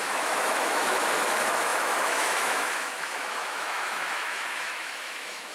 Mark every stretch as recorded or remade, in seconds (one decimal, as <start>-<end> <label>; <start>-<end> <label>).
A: 0.0-5.5 remade